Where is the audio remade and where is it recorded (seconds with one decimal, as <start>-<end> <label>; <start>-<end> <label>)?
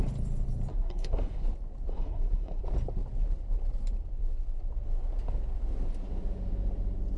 0.0-0.7 recorded; 0.7-1.4 remade; 1.4-1.9 recorded; 1.9-2.6 remade; 2.6-7.2 recorded